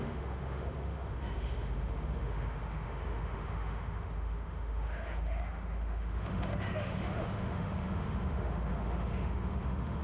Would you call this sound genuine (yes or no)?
no